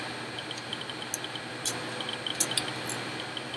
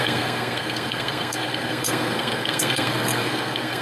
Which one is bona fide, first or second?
first